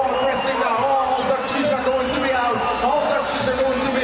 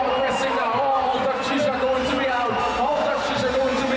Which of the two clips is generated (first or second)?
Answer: second